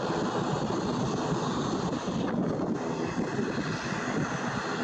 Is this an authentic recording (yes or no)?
yes